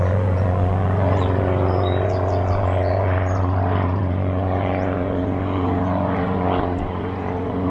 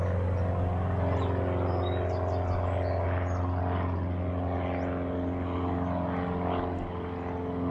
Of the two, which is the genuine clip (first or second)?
second